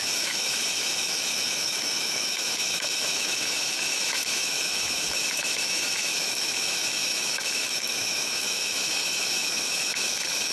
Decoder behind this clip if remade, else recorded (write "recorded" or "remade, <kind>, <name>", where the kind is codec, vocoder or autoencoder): remade, autoencoder, DAC-VAE